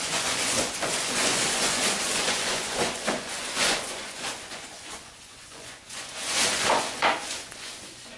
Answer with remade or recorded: remade